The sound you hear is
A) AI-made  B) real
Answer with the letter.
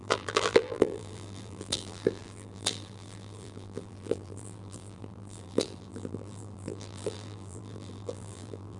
A